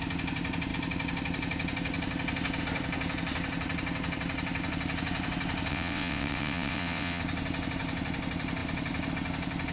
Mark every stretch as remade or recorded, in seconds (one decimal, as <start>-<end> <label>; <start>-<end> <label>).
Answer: 0.0-5.7 recorded; 5.7-7.2 remade; 7.2-9.7 recorded